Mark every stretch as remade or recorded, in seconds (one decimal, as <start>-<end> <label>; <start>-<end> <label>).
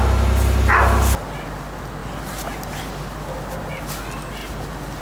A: 0.0-5.0 recorded